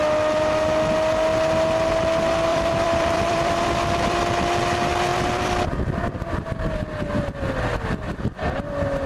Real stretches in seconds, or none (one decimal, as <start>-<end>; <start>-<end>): 0.0-2.5; 4.2-5.1; 6.3-9.1